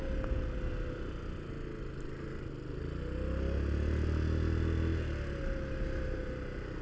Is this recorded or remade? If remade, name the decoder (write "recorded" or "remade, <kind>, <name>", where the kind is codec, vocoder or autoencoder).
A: recorded